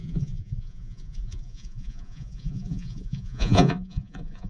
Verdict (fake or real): fake